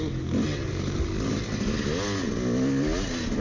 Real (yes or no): yes